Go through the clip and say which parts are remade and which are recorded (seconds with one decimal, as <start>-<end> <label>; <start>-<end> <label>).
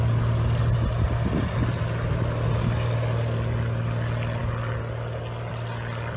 0.0-6.2 recorded